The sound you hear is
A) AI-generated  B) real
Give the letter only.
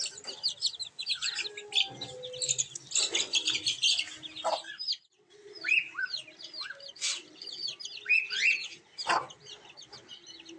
B